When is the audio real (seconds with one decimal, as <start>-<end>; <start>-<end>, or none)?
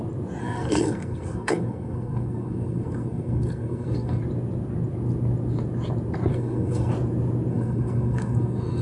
0.0-0.4; 4.2-6.3; 6.9-7.5